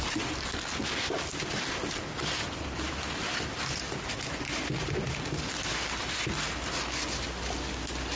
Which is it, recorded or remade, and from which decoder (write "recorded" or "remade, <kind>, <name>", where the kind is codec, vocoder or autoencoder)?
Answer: recorded